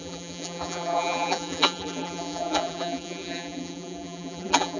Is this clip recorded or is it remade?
remade